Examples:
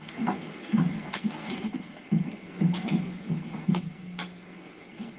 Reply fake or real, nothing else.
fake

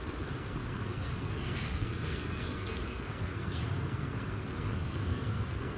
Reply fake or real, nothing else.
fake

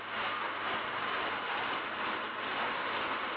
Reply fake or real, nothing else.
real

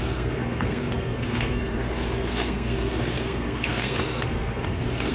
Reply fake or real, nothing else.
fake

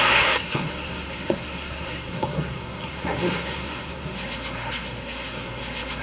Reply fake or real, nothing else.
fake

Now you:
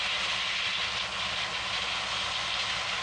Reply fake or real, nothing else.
real